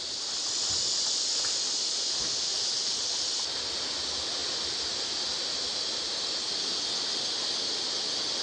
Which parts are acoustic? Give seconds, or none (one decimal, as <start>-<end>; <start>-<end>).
0.0-8.4